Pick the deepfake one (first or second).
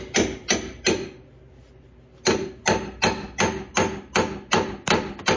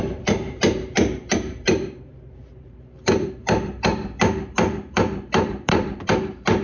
second